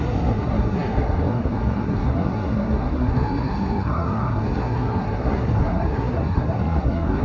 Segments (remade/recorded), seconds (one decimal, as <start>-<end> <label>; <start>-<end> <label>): 0.0-7.2 remade